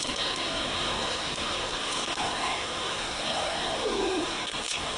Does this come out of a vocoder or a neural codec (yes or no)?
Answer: yes